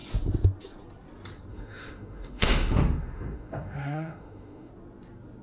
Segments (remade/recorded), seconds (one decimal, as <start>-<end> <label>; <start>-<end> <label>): 0.0-1.5 recorded; 1.5-4.7 remade; 4.7-5.4 recorded